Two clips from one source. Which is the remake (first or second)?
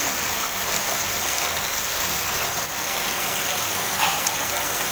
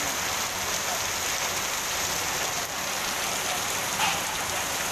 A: first